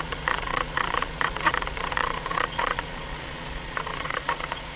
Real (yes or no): no